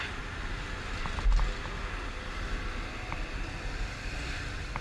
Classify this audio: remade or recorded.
recorded